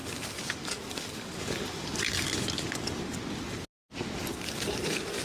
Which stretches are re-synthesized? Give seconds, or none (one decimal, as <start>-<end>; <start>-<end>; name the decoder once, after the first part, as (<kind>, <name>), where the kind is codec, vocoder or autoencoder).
0.0-3.0 (codec, DAC); 4.3-5.2